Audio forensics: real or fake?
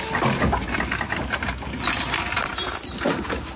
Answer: real